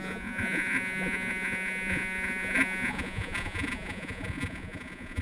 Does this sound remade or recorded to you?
remade